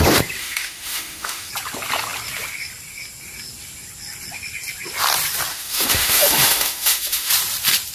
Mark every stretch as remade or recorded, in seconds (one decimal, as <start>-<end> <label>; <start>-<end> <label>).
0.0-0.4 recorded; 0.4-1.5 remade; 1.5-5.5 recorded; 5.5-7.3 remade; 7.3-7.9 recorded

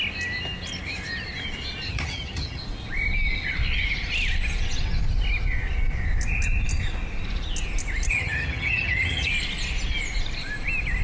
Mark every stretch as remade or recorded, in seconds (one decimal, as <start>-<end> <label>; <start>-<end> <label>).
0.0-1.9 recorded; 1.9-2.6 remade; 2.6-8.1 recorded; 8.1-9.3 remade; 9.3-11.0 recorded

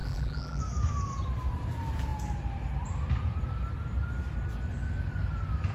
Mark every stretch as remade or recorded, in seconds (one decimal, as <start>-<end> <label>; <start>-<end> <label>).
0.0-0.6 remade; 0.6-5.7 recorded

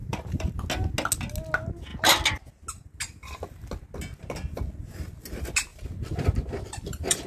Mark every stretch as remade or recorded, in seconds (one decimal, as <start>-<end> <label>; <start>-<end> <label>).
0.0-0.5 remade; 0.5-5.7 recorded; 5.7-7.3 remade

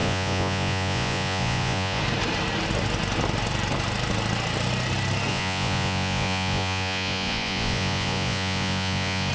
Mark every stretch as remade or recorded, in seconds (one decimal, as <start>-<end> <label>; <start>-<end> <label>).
0.0-2.0 remade; 2.0-5.3 recorded; 5.3-9.3 remade

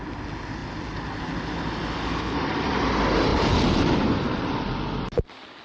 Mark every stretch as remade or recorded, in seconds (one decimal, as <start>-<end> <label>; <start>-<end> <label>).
0.0-3.3 recorded; 3.3-4.6 remade; 4.6-5.6 recorded